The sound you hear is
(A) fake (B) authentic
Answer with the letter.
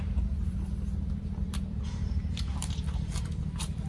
A